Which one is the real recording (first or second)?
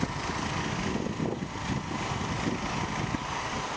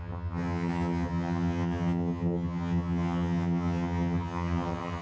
first